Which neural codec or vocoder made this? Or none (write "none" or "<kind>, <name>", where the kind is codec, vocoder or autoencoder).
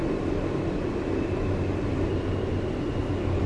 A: none